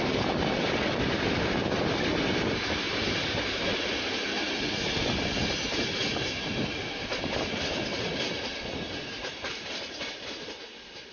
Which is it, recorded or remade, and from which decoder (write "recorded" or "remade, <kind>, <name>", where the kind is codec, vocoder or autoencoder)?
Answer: recorded